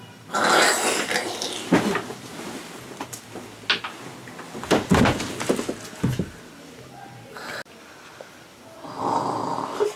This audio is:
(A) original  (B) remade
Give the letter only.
A